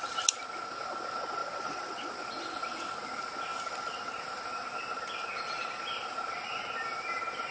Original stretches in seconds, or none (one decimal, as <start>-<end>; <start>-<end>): 0.0-1.4; 2.1-7.5